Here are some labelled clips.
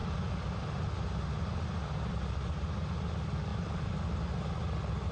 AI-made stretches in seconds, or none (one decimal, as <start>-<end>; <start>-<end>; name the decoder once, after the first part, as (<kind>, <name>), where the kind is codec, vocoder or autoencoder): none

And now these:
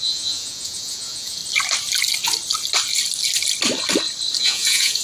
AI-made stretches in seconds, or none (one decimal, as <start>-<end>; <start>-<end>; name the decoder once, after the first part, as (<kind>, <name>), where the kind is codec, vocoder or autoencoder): 0.0-1.4 (vocoder, Vocos); 4.4-5.0

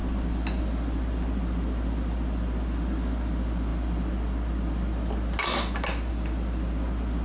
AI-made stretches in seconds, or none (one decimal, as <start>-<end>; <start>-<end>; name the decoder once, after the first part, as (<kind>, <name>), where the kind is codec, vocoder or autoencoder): none

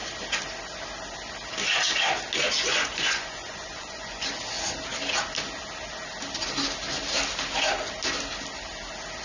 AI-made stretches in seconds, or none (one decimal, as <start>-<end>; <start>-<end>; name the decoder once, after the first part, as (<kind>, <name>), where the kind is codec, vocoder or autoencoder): 2.7-4.3 (vocoder, Vocos)

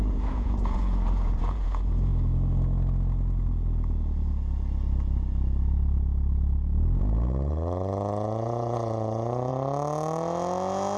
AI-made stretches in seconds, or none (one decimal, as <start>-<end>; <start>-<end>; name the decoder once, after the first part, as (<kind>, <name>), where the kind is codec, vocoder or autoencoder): 0.0-2.1 (vocoder, Vocos); 7.0-9.5

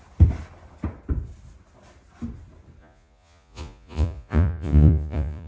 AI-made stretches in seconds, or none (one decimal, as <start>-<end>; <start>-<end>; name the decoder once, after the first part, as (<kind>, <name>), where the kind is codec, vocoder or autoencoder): 2.8-5.5 (vocoder, Vocos)

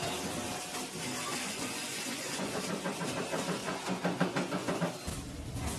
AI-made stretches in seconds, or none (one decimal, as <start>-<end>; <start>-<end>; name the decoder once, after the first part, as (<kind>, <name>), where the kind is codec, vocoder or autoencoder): 1.3-2.6 (vocoder, Vocos); 3.6-4.8

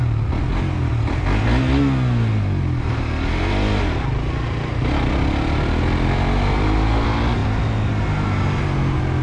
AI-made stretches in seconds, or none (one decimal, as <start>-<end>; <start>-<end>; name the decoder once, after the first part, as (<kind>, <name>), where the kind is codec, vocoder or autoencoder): none